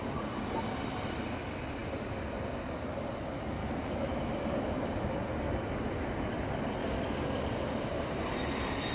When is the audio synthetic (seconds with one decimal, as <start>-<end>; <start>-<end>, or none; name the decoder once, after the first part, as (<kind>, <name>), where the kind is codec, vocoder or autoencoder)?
3.6-4.9 (autoencoder, DAC-VAE)